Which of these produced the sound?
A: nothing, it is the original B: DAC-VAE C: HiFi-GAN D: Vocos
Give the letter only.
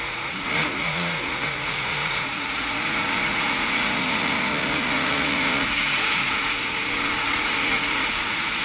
D